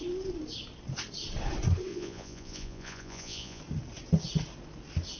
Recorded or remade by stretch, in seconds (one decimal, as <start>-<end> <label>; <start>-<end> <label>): 0.0-1.9 recorded; 1.9-3.6 remade; 3.6-5.2 recorded